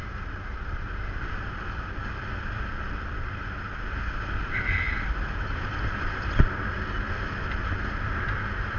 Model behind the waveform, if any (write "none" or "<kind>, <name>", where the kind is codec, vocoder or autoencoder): none